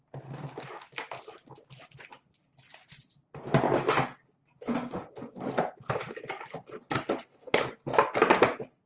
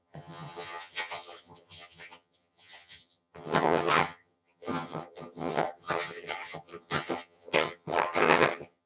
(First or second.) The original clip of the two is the first